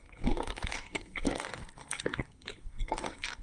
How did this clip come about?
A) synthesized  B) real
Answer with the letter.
A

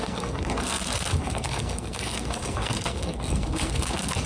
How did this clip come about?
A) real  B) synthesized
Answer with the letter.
B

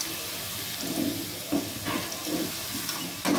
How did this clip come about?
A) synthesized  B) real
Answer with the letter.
B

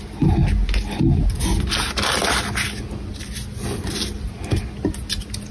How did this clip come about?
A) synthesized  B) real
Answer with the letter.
B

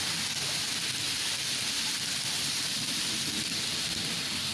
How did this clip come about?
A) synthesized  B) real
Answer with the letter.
B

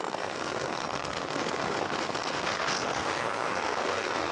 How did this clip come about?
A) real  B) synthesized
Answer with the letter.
B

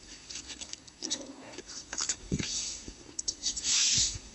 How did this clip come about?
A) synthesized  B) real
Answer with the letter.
A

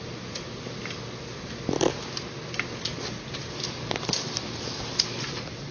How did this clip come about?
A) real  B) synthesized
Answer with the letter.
A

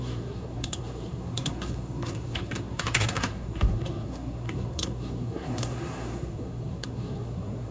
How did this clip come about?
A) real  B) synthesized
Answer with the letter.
B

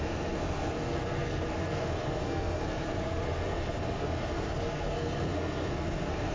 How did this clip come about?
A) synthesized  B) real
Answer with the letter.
A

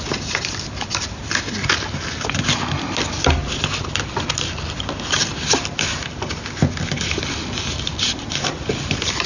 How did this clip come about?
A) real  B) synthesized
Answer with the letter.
A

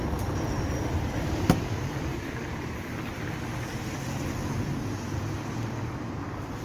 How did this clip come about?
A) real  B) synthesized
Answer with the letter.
A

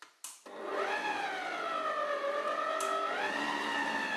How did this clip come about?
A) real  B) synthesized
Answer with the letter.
A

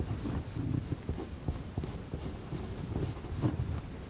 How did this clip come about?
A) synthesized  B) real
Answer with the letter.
B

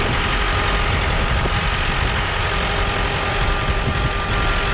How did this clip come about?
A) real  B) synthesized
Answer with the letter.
A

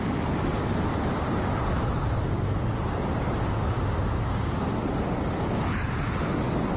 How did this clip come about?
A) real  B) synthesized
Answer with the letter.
A